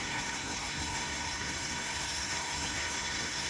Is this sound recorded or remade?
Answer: remade